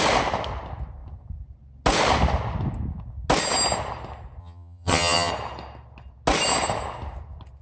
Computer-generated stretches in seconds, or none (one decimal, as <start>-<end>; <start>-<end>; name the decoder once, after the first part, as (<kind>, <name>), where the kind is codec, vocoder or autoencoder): 4.4-5.3 (vocoder, HiFi-GAN)